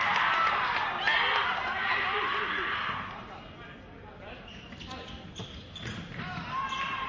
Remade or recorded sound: recorded